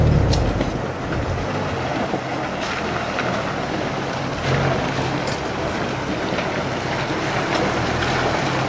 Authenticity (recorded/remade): recorded